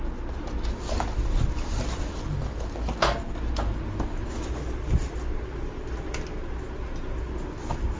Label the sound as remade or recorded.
recorded